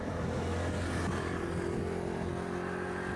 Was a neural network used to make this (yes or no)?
no